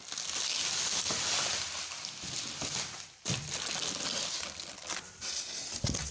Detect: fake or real real